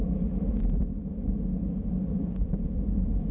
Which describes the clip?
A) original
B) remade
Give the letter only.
A